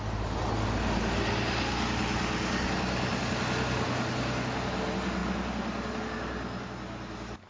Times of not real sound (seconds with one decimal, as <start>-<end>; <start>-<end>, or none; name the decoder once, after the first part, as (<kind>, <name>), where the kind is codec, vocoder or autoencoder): none